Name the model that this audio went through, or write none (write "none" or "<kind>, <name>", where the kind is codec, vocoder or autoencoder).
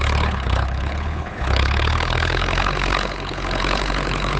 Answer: codec, HILCodec